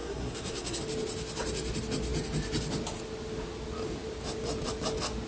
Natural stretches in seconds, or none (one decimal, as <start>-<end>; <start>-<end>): 0.8-5.3

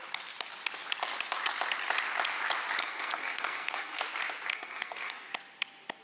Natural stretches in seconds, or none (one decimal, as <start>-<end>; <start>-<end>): 0.0-2.8; 4.0-4.5; 5.3-6.0

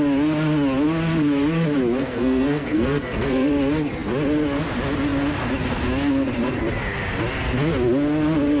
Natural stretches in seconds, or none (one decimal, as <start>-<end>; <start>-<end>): 0.0-2.0; 3.5-8.6